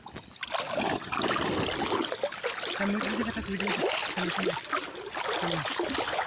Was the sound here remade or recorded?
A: recorded